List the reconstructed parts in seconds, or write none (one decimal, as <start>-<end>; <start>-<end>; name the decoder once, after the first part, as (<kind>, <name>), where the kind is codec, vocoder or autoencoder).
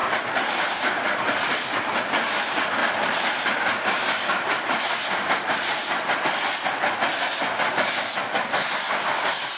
0.0-2.1 (vocoder, BigVGAN v2); 2.8-6.2; 8.1-9.6